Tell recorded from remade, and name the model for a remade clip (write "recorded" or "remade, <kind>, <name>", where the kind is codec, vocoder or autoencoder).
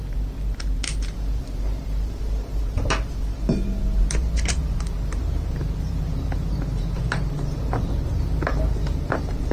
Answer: remade, vocoder, BigVGAN v2